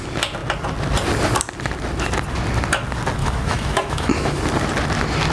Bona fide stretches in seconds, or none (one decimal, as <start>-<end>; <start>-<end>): 0.0-3.2; 4.4-5.3